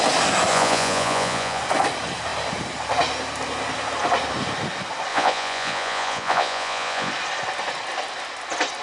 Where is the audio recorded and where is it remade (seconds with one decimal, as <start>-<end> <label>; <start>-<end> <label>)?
0.0-0.5 recorded; 0.5-1.6 remade; 1.6-5.1 recorded; 5.1-7.1 remade; 7.1-8.8 recorded